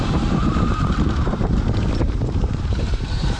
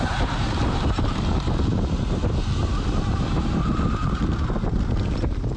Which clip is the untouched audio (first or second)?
second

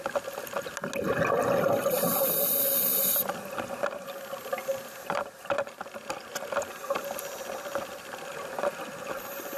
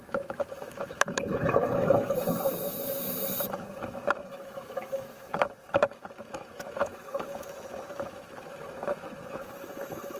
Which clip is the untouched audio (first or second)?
first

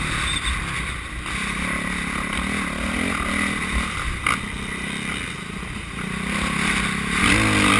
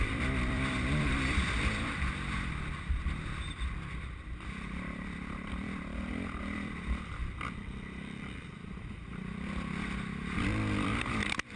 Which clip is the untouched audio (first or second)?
first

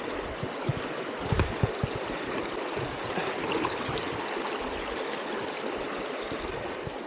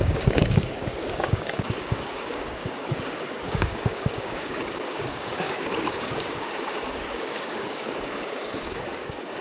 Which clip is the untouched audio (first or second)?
first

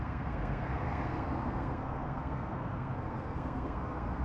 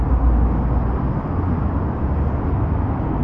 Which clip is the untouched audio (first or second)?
second